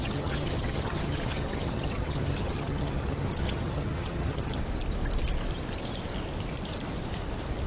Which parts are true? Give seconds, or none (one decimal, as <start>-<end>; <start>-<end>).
4.6-7.7